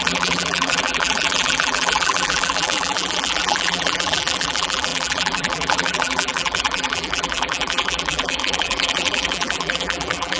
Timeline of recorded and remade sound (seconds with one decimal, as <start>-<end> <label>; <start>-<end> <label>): 0.0-10.4 remade